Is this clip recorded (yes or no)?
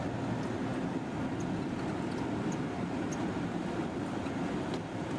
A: yes